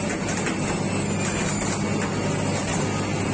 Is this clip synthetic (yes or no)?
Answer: no